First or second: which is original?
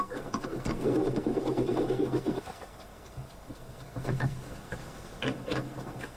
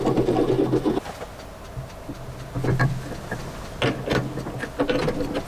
second